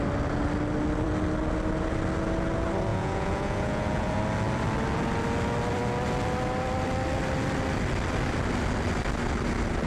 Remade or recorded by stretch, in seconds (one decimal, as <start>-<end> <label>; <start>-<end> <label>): 0.0-2.9 recorded; 2.9-4.2 remade; 4.2-9.9 recorded